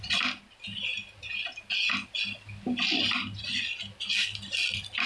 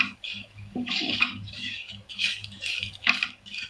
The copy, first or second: second